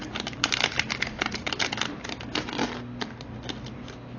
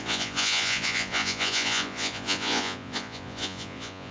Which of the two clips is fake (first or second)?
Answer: second